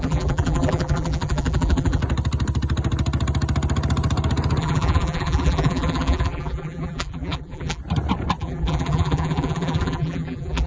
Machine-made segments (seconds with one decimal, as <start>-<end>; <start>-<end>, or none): 0.0-2.0; 4.6-7.8; 8.4-10.7